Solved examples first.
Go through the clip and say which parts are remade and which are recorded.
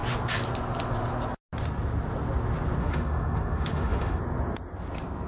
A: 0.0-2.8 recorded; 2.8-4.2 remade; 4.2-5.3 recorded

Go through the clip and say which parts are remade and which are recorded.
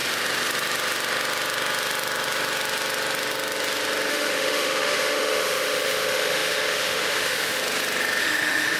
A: 0.0-4.1 recorded; 4.1-7.6 remade; 7.6-8.2 recorded; 8.2-8.8 remade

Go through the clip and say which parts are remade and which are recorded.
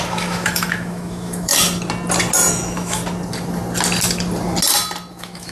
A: 0.0-1.5 remade; 1.5-2.5 recorded; 2.5-3.0 remade; 3.0-5.1 recorded; 5.1-5.5 remade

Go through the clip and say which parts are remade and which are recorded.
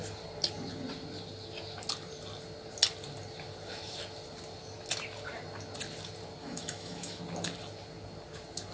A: 0.0-6.4 recorded; 6.4-7.2 remade; 7.2-8.7 recorded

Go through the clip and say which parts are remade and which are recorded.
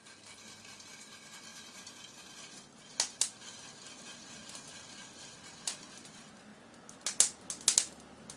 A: 0.0-8.4 recorded